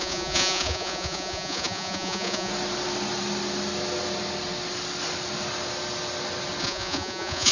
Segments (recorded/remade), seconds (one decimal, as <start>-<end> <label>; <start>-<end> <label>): 0.0-2.5 remade; 2.5-6.6 recorded; 6.6-7.5 remade